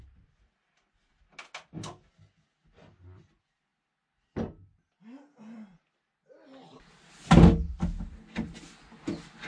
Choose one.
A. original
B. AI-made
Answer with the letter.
A